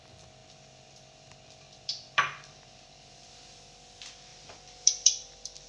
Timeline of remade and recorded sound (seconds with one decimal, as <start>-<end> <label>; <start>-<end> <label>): 0.0-0.4 recorded; 0.4-3.3 remade; 3.3-4.3 recorded; 4.3-5.7 remade